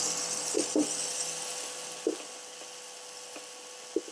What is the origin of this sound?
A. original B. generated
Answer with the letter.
A